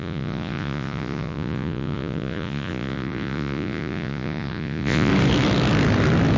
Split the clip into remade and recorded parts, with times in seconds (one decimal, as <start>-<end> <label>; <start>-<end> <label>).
0.0-5.1 remade; 5.1-6.4 recorded